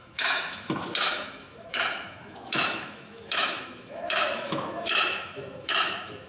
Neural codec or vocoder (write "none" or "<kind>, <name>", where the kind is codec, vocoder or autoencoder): autoencoder, DAC-VAE